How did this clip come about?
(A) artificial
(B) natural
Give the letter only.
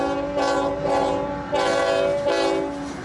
B